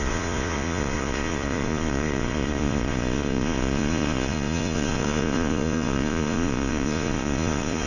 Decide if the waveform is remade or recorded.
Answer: remade